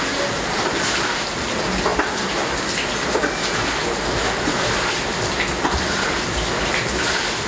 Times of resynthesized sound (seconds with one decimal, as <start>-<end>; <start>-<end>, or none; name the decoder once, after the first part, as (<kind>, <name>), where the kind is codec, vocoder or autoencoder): 0.0-7.5 (vocoder, BigVGAN v2)